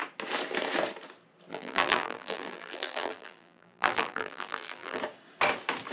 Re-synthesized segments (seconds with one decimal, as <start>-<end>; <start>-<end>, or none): 1.5-5.0